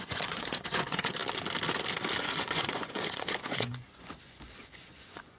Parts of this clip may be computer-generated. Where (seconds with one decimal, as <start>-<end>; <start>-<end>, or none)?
0.0-1.2; 2.2-5.4